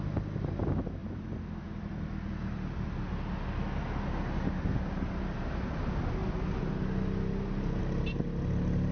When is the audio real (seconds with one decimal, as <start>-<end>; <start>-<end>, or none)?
0.0-8.9